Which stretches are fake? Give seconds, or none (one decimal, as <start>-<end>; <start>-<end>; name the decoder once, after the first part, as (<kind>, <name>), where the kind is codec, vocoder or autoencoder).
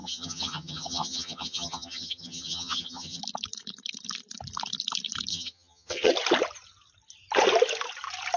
0.0-3.2 (vocoder, HiFi-GAN); 5.3-6.1